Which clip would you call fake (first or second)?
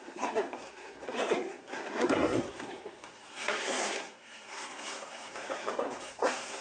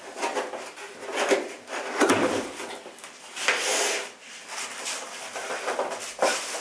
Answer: first